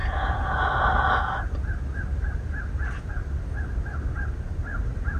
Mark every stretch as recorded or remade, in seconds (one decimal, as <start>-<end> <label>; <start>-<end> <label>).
0.0-5.2 recorded